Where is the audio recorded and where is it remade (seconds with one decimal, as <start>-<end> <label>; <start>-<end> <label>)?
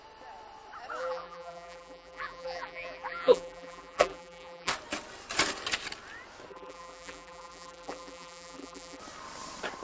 0.0-1.0 recorded; 1.0-4.7 remade; 4.7-6.5 recorded; 6.5-9.0 remade; 9.0-9.8 recorded